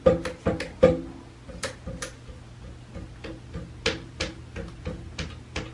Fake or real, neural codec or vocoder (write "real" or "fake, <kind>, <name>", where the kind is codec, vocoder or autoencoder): real